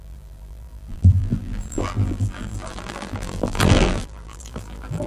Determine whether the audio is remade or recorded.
remade